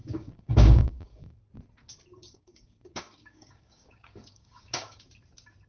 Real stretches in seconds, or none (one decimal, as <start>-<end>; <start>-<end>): 1.4-2.2; 5.1-5.7